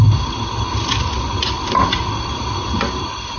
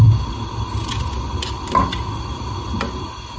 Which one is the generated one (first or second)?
first